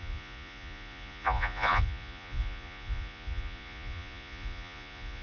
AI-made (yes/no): yes